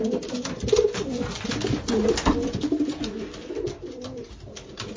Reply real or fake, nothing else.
real